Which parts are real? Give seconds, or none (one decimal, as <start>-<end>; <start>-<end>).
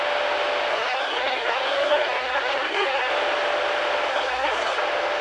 0.0-0.7; 3.1-4.1; 4.8-5.2